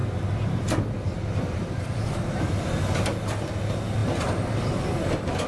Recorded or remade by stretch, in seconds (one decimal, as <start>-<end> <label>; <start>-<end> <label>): 0.0-2.2 remade; 2.2-5.5 recorded